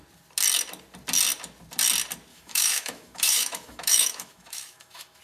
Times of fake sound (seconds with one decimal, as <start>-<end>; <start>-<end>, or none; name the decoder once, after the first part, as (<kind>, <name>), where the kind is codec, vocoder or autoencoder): 2.3-5.2 (autoencoder, DAC-VAE)